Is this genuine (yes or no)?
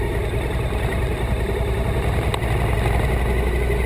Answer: yes